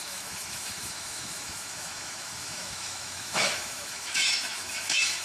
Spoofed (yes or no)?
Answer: yes